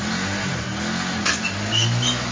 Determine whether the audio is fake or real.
real